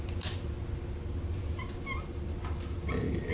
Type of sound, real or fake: real